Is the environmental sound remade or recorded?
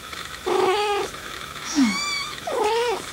remade